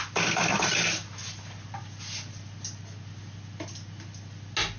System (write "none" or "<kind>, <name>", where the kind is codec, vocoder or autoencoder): none